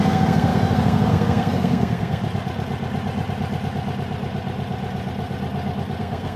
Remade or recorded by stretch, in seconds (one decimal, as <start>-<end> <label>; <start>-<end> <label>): 0.0-2.2 remade; 2.2-6.0 recorded; 6.0-6.4 remade